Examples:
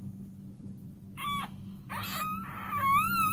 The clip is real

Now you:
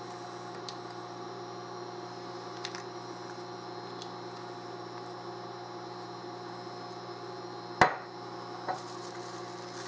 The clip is real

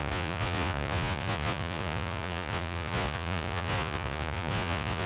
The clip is fake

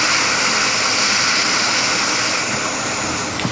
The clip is real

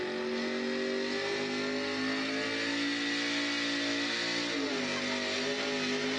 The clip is real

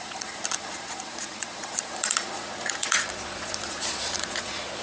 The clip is fake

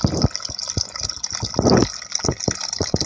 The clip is real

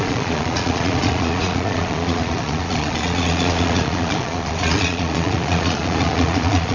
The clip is fake